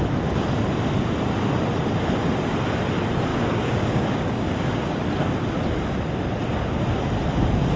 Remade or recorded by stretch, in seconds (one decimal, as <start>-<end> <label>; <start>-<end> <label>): 0.0-3.3 recorded; 3.3-5.0 remade; 5.0-7.8 recorded